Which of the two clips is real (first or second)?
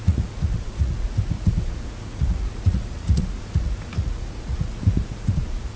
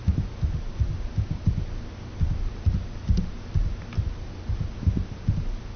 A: second